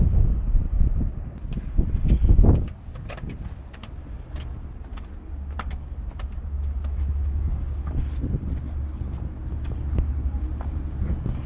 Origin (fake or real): real